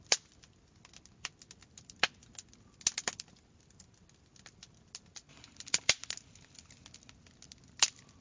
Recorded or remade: recorded